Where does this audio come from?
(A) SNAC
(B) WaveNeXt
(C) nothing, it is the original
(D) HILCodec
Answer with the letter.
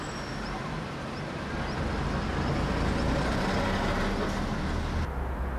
C